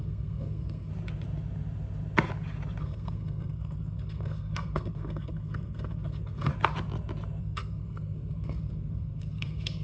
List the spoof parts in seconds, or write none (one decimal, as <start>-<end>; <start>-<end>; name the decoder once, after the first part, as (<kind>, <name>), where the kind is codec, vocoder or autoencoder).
0.0-0.9 (codec, SNAC); 2.8-6.5; 7.4-9.8